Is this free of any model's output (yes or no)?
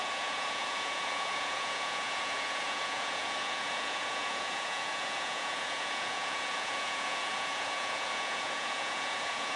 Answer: no